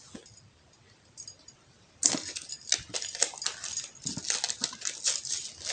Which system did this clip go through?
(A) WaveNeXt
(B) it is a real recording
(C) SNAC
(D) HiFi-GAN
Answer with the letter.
B